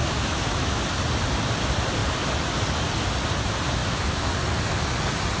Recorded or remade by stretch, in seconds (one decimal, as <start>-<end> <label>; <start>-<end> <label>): 0.0-0.8 remade; 0.8-3.8 recorded; 3.8-4.3 remade; 4.3-5.4 recorded